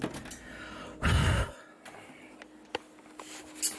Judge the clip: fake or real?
real